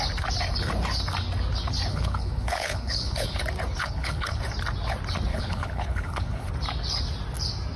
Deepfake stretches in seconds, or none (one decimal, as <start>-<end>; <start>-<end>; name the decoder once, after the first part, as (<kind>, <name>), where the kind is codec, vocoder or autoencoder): 1.9-3.4 (codec, HILCodec); 3.8-4.4; 5.3-6.5